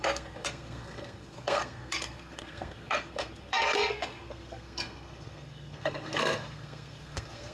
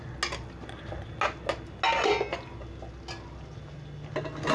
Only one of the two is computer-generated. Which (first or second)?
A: first